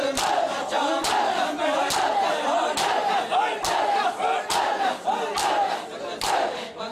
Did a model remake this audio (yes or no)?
no